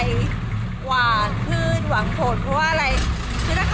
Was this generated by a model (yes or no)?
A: no